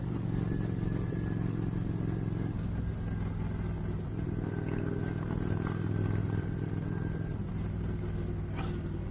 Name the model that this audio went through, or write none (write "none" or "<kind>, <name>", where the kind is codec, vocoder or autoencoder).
none